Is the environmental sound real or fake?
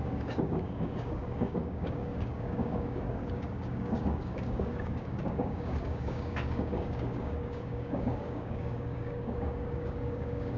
fake